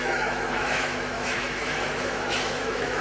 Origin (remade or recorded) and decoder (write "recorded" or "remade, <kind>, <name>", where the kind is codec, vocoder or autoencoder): remade, autoencoder, DAC-VAE